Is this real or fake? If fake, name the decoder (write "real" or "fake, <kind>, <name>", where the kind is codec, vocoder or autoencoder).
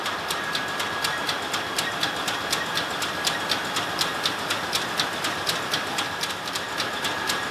real